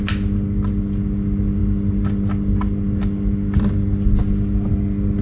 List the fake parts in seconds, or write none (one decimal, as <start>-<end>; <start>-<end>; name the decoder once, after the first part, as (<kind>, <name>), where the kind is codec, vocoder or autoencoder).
none